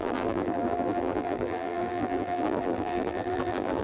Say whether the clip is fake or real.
fake